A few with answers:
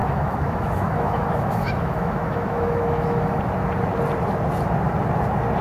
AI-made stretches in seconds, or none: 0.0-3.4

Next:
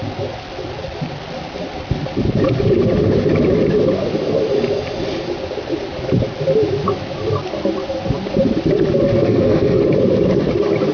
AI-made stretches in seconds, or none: 9.1-9.8

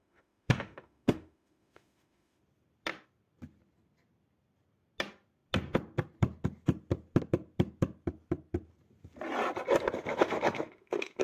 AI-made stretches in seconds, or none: 0.0-2.4; 10.1-11.2

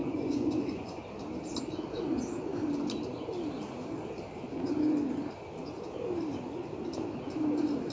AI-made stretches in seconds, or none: 0.0-1.0

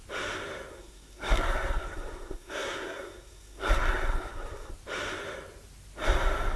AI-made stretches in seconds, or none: 0.7-4.7

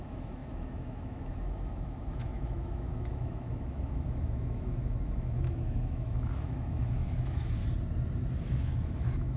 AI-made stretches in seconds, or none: 0.0-7.6; 8.5-9.4

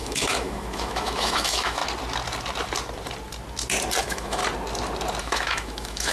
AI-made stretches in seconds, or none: 0.0-1.8; 4.0-4.4; 5.2-6.1